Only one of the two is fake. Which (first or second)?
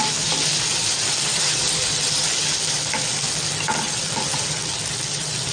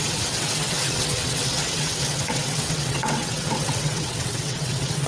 second